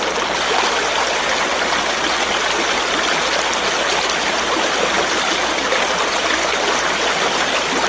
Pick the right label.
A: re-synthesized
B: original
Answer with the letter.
B